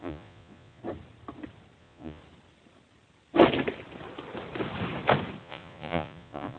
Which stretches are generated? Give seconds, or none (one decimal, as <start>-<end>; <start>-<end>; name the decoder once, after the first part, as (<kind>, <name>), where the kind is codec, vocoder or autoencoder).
0.0-0.8 (vocoder, Vocos); 1.8-2.2; 5.4-6.6